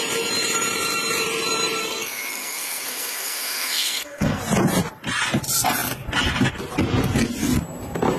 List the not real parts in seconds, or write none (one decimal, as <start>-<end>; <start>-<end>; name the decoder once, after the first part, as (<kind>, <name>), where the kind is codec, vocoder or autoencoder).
1.8-4.4 (codec, SNAC)

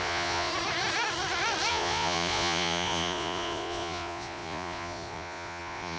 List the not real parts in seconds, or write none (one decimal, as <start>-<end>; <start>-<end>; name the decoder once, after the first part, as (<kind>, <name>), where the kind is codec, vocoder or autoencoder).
0.0-0.5 (vocoder, Vocos); 1.7-6.0